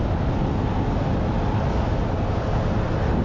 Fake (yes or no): no